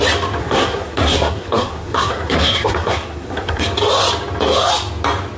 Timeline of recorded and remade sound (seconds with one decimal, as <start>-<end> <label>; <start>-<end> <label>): 0.0-0.4 recorded; 0.4-3.6 remade; 3.6-5.4 recorded